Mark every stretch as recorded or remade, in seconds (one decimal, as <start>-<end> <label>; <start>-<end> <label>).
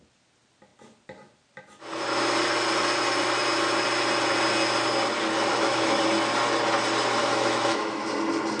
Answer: 0.0-5.5 recorded; 5.5-6.0 remade; 6.0-7.2 recorded; 7.2-8.0 remade; 8.0-8.6 recorded